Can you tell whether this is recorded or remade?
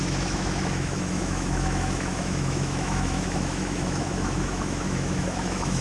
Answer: remade